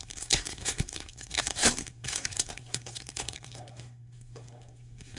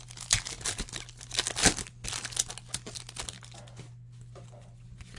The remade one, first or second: first